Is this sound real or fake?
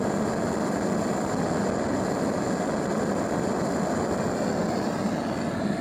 real